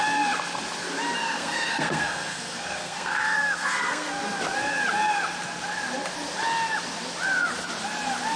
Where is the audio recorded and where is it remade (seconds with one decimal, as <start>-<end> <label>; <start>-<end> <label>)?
0.0-1.2 recorded; 1.2-4.2 remade; 4.2-8.4 recorded